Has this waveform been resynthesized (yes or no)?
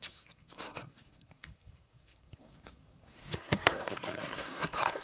yes